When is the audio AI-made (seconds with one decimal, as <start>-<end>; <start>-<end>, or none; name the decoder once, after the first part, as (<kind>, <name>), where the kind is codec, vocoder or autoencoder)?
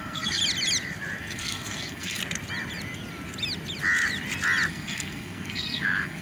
0.0-0.4 (codec, SNAC); 1.2-2.2; 4.7-6.2